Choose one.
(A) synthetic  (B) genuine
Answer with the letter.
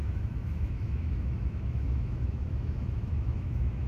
A